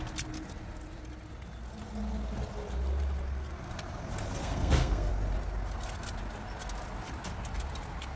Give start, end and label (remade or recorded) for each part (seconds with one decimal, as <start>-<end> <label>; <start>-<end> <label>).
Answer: 0.0-4.4 recorded; 4.4-5.1 remade; 5.1-8.2 recorded